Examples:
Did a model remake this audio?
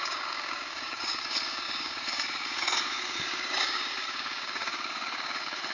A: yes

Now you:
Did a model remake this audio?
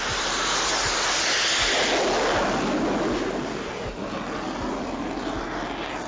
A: no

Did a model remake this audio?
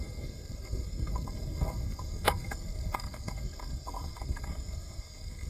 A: yes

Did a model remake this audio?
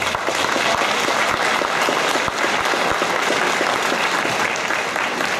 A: no